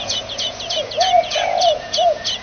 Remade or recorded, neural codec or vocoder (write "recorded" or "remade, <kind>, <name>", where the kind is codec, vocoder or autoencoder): remade, vocoder, Vocos